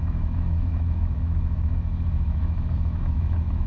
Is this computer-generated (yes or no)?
yes